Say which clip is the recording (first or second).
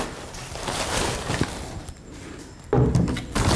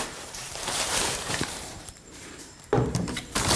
first